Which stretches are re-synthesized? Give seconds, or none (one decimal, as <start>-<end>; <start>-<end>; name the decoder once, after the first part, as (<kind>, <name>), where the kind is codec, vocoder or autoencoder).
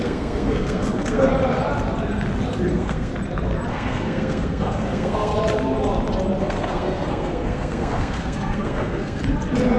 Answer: 0.0-1.3 (codec, SNAC); 2.7-3.1; 3.7-5.3; 6.4-9.2